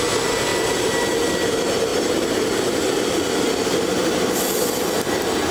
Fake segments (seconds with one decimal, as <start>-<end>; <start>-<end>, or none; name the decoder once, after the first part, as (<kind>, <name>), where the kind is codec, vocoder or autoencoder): none